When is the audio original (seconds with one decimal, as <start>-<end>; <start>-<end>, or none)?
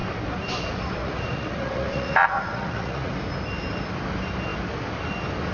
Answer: 0.0-1.0; 3.1-5.5